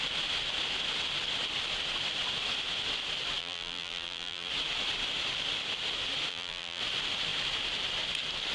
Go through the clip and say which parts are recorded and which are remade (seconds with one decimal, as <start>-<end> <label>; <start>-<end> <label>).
0.0-3.4 recorded; 3.4-4.5 remade; 4.5-6.3 recorded; 6.3-6.8 remade; 6.8-8.5 recorded